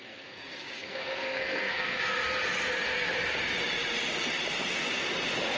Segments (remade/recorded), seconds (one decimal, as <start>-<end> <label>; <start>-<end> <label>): 0.0-2.2 remade; 2.2-5.6 recorded